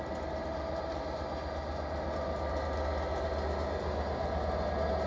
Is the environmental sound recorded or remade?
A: recorded